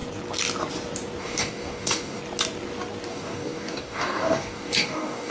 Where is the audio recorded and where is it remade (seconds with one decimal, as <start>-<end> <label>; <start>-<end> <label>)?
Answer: 0.0-1.2 recorded; 1.2-2.2 remade; 2.2-3.1 recorded; 3.1-5.3 remade